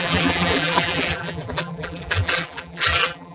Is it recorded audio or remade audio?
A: remade